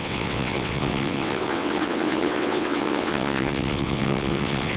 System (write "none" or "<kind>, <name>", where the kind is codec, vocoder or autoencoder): vocoder, WaveNeXt